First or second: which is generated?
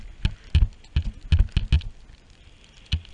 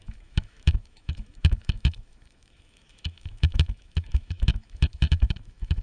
second